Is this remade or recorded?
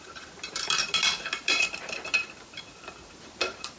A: remade